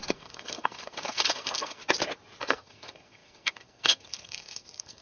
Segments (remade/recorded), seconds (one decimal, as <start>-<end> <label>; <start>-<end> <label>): 0.0-1.8 remade; 1.8-2.4 recorded; 2.4-5.0 remade